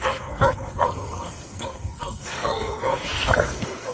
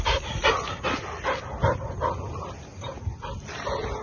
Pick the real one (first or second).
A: second